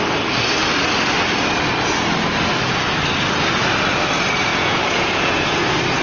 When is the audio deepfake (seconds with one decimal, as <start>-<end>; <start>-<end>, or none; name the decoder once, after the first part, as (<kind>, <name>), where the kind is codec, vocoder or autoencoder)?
4.5-5.6 (vocoder, Vocos)